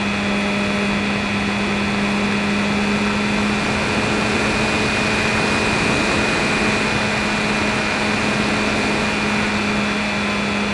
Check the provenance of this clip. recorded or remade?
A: recorded